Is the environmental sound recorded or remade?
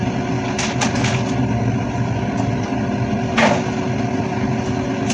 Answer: recorded